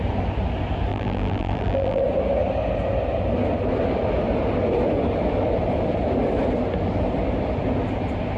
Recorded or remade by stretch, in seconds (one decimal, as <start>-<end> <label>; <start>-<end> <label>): 0.0-0.9 recorded; 0.9-2.0 remade; 2.0-8.4 recorded